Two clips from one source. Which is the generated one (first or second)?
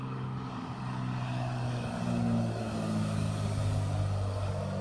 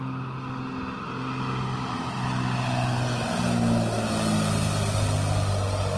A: first